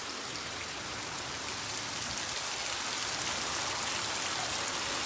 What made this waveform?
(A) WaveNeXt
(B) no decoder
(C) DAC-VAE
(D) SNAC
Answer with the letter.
B